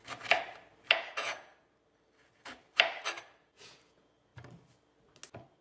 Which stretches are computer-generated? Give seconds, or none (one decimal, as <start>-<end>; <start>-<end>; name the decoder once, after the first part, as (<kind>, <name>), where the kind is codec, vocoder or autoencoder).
0.9-1.5 (vocoder, Vocos); 3.4-4.3

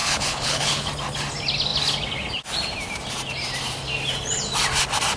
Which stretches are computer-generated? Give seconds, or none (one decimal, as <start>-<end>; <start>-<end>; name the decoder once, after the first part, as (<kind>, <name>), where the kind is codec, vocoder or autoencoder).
0.0-0.9 (codec, HILCodec)

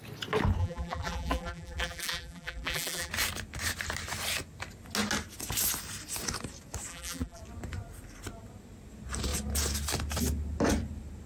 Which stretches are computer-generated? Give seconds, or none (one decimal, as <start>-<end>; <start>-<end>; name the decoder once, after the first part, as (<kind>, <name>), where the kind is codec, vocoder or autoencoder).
0.6-3.1 (vocoder, BigVGAN v2); 6.9-7.4

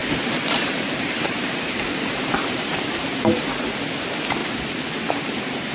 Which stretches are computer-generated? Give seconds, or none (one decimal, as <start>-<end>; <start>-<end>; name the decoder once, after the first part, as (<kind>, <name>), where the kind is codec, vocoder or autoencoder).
0.0-3.4 (vocoder, BigVGAN v2); 4.4-5.7

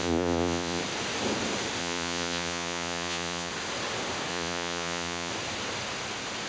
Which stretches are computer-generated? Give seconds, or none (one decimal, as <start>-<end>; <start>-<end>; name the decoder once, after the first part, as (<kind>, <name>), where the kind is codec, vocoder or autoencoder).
0.0-0.8 (vocoder, Vocos); 1.8-3.5; 4.3-5.3